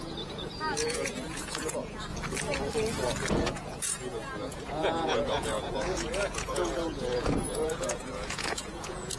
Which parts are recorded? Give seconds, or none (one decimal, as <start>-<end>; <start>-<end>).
2.1-3.3